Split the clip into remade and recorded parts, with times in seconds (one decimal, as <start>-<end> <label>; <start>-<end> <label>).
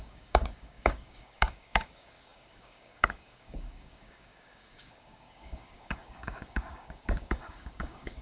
0.0-8.2 remade